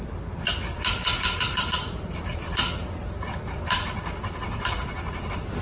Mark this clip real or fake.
real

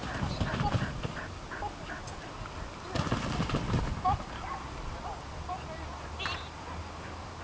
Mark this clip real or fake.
real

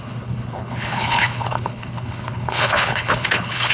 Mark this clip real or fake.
fake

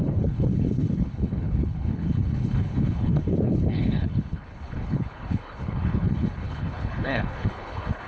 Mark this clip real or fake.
fake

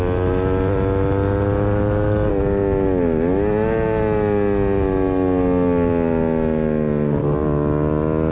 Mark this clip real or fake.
real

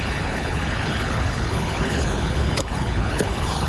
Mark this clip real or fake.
fake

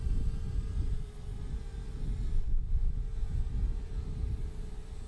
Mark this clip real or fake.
real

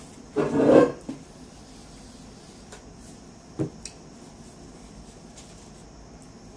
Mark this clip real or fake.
real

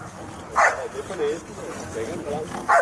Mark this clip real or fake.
real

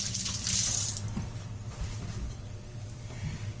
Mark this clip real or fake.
real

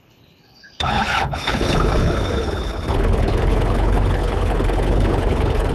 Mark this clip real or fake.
fake